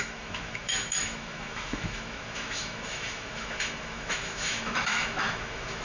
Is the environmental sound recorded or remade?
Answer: remade